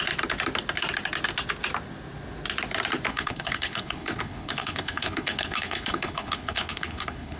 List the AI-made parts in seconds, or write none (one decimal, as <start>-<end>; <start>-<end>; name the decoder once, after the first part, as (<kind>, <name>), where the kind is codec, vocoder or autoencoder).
3.1-7.4 (codec, HILCodec)